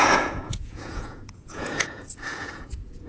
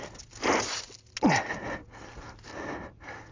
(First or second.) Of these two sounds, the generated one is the first